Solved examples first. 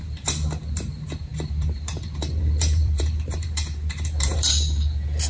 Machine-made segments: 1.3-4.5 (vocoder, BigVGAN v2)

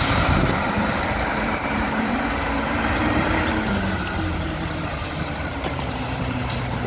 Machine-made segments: 0.0-6.9 (vocoder, BigVGAN v2)

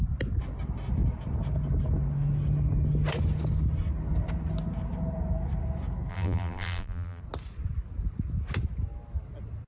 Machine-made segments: 6.1-7.2 (vocoder, BigVGAN v2)

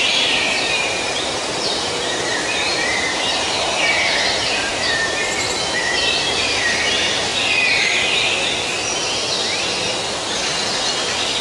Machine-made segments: 0.0-7.3 (vocoder, BigVGAN v2)

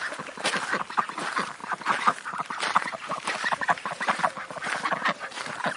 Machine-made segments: 1.6-4.2 (vocoder, BigVGAN v2)